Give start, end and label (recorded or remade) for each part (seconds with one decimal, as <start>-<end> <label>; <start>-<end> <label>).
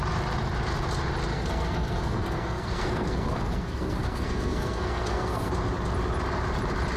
0.0-1.3 recorded; 1.3-5.5 remade; 5.5-7.0 recorded